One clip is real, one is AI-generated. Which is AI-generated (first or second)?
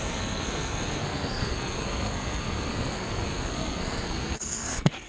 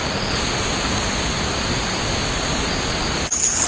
first